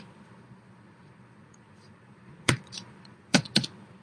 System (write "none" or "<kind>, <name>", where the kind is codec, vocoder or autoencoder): vocoder, Vocos